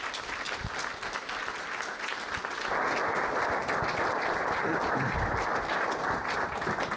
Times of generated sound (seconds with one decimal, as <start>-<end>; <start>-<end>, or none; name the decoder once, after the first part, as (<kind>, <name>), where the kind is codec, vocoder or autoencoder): none